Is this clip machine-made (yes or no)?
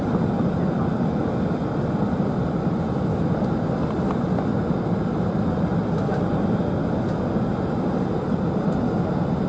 no